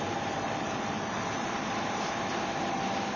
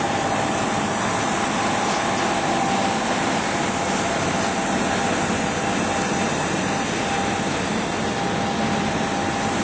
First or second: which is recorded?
second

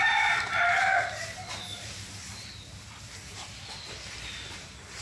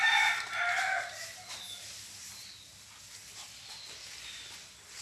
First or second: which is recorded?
second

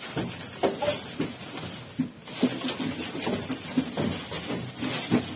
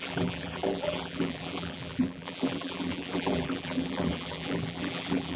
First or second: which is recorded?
first